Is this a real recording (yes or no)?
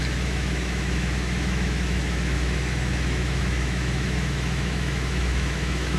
no